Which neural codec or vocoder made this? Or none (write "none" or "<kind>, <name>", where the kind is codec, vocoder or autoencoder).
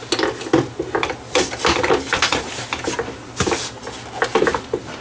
none